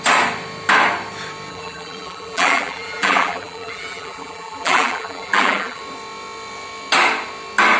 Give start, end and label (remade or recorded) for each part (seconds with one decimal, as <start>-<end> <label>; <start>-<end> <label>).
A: 0.0-1.5 recorded; 1.5-5.8 remade; 5.8-7.8 recorded